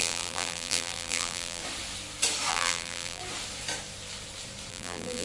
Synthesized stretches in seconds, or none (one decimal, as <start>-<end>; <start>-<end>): 0.0-1.6; 2.5-3.2; 4.7-5.2